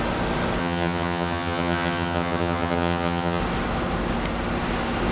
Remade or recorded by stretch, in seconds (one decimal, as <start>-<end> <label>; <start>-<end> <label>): 0.0-0.6 recorded; 0.6-3.4 remade; 3.4-5.1 recorded